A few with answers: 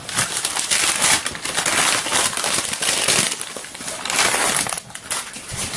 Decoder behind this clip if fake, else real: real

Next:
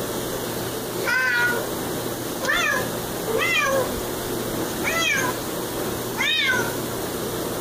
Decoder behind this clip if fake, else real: real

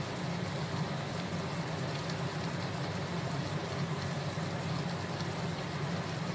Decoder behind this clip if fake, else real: real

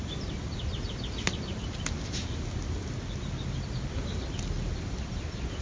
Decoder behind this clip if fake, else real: real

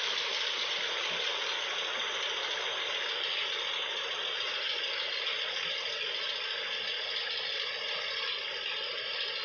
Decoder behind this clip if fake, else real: real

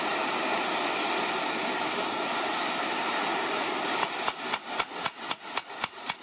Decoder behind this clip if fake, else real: real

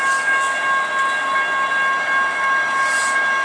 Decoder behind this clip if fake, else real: real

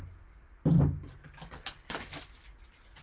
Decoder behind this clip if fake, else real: real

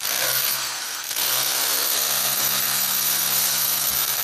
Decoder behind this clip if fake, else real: fake, codec, SNAC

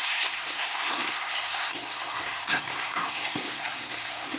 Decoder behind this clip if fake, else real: fake, codec, SNAC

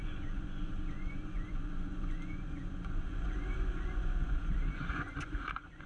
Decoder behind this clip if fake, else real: fake, vocoder, Vocos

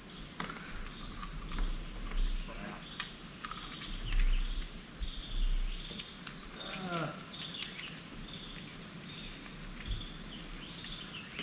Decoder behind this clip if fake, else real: real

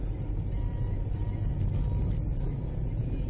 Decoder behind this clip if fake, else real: real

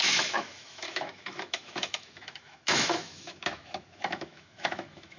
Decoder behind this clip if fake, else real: fake, autoencoder, DAC-VAE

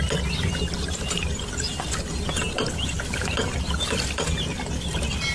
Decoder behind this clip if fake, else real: real